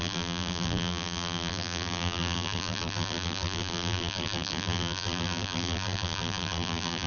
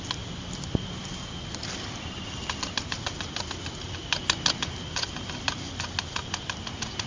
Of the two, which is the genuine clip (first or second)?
second